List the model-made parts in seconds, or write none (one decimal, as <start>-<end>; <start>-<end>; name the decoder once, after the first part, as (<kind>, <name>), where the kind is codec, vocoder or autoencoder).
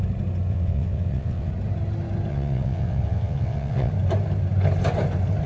0.5-1.5 (vocoder, WaveNeXt); 2.3-3.9